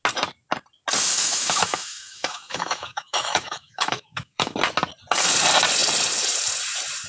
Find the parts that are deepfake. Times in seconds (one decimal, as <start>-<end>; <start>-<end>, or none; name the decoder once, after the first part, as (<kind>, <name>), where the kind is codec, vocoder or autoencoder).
1.2-4.6 (autoencoder, DAC-VAE)

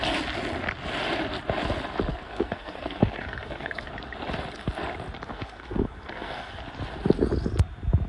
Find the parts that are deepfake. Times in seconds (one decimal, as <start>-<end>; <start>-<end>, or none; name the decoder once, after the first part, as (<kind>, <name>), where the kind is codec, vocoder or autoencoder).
2.1-3.9 (codec, SNAC); 5.3-6.6

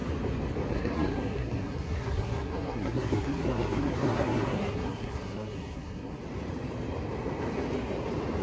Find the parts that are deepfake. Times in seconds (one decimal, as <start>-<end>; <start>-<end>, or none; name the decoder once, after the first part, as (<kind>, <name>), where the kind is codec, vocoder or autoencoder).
0.7-6.2 (codec, SNAC)

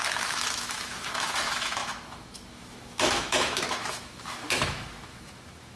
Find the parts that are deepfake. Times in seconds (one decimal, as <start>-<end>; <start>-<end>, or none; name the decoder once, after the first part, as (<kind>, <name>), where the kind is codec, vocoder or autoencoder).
0.0-5.8 (autoencoder, DAC-VAE)